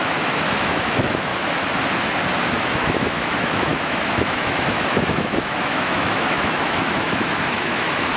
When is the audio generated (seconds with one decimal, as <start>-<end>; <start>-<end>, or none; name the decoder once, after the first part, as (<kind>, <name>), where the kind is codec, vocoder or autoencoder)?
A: 0.0-1.3 (autoencoder, DAC-VAE); 2.5-8.2